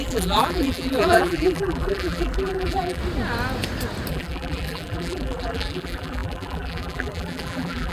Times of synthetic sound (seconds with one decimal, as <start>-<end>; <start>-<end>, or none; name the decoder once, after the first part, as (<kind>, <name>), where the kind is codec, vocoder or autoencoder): 0.0-3.0 (vocoder, BigVGAN v2); 4.1-7.9